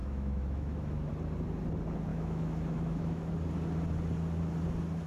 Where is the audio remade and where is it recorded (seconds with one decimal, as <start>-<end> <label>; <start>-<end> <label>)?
0.0-1.1 remade; 1.1-2.1 recorded; 2.1-3.3 remade; 3.3-5.1 recorded